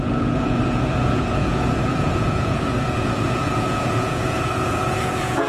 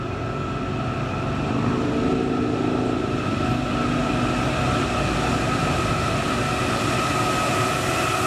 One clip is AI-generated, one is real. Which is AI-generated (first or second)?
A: first